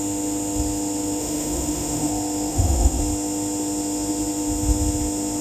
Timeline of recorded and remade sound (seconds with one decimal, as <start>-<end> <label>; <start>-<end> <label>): 0.0-1.2 recorded; 1.2-2.1 remade; 2.1-2.5 recorded; 2.5-3.0 remade; 3.0-5.4 recorded